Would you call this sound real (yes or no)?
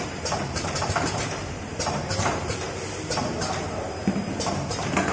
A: no